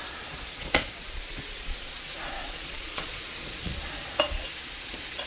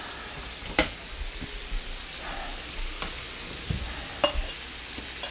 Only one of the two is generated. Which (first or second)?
first